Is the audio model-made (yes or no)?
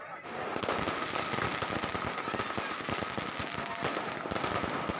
no